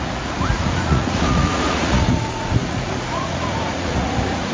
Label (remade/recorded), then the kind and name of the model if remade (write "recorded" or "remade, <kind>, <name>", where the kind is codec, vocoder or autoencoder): remade, vocoder, Vocos